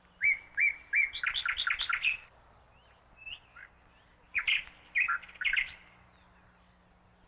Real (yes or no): yes